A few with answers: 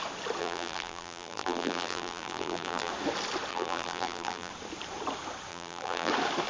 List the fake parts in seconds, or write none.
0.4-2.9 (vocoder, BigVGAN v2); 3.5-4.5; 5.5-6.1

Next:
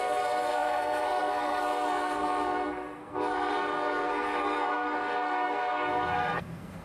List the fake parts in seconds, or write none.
0.0-6.8 (codec, SNAC)

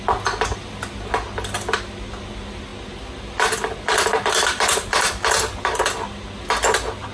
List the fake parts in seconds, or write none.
none